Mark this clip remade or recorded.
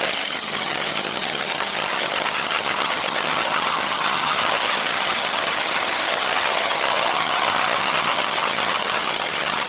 remade